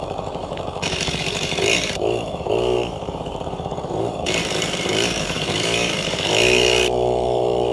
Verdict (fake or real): fake